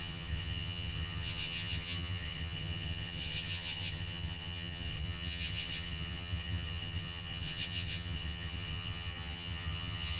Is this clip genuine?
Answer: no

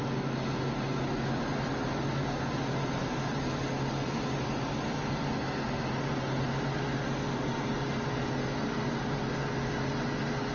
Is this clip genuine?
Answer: yes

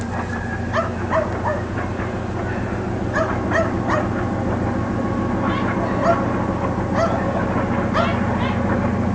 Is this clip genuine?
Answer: yes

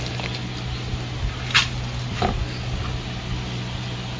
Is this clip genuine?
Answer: yes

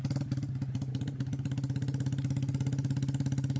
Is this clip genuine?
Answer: yes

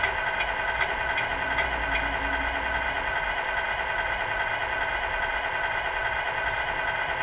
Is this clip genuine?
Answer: yes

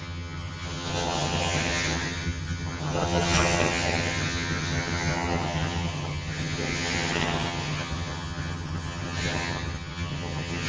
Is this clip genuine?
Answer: no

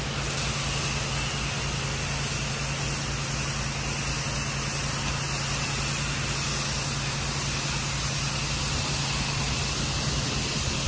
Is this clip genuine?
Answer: yes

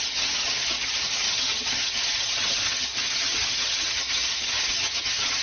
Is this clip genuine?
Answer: no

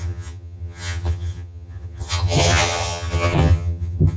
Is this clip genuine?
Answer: no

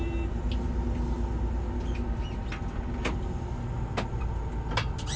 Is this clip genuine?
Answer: yes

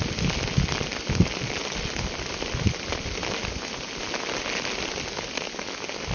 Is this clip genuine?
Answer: yes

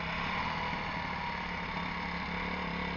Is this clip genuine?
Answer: yes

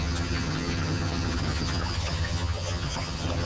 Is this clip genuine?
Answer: no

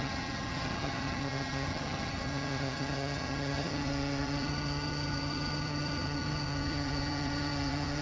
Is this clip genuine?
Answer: no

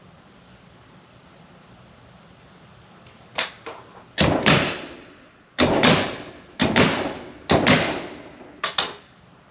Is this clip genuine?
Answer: yes